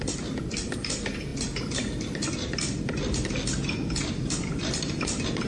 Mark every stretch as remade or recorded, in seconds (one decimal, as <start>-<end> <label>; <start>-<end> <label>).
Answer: 0.0-5.5 recorded